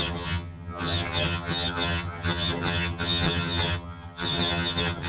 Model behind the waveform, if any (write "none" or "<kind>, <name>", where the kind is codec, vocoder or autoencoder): vocoder, HiFi-GAN